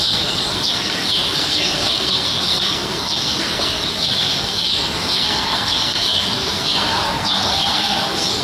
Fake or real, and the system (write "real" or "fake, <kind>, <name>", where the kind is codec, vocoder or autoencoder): fake, codec, SNAC